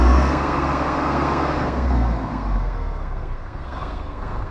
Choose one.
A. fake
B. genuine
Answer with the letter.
A